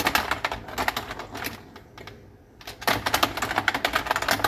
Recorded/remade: recorded